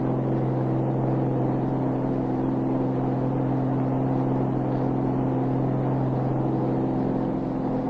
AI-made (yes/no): no